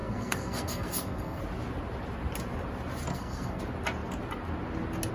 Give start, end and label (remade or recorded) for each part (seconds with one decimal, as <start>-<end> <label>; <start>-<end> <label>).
0.0-1.4 remade; 1.4-3.1 recorded; 3.1-3.6 remade; 3.6-5.1 recorded